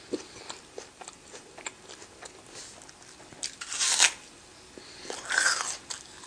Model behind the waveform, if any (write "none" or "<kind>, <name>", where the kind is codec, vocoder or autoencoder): none